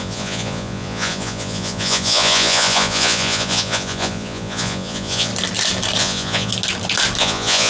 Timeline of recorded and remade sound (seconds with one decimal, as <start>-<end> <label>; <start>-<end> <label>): 0.0-5.3 remade; 5.3-6.0 recorded; 6.0-6.5 remade; 6.5-7.2 recorded; 7.2-7.7 remade